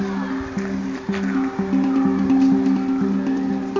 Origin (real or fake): real